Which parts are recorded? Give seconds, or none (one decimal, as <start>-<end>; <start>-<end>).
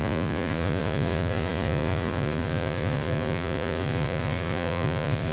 none